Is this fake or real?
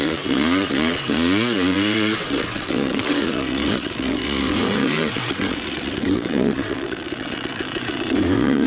fake